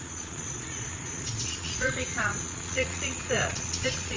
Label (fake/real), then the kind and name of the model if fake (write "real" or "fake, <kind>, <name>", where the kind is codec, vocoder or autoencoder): fake, vocoder, Vocos